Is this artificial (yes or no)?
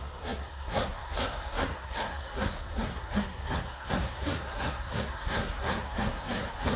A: yes